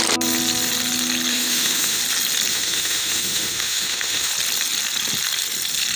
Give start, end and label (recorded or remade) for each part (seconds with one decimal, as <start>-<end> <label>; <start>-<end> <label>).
0.0-1.3 recorded; 1.3-2.0 remade; 2.0-2.5 recorded; 2.5-4.3 remade; 4.3-6.0 recorded